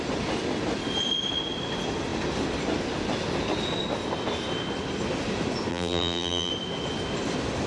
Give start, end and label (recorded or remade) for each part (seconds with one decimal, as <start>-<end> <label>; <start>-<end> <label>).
0.0-5.7 recorded; 5.7-6.5 remade; 6.5-7.7 recorded